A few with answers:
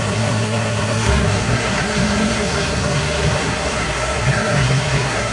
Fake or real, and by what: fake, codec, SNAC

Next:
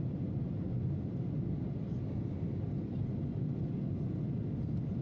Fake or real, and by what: real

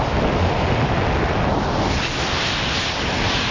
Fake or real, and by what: real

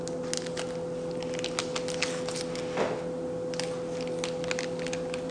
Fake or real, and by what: real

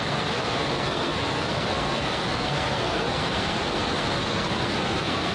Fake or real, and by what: fake, codec, SNAC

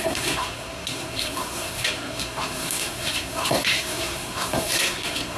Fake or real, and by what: fake, codec, SNAC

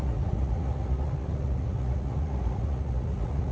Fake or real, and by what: fake, vocoder, Vocos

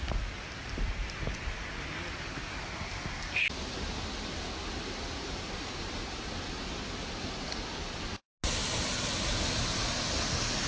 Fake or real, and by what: real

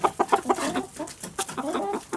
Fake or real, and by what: real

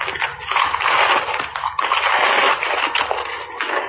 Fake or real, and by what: real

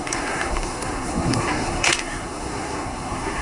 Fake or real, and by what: fake, codec, SNAC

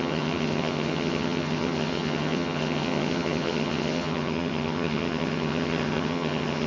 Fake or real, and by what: fake, vocoder, HiFi-GAN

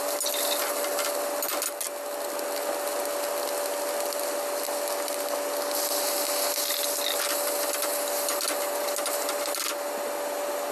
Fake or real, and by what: real